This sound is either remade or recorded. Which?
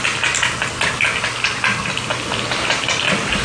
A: recorded